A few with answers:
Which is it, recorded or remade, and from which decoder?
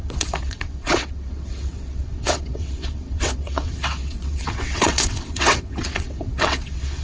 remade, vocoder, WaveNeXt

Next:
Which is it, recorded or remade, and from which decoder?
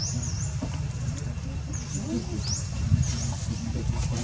recorded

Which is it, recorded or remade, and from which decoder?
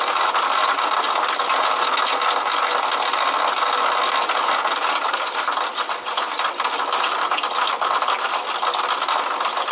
recorded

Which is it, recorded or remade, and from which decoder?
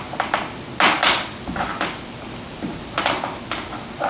recorded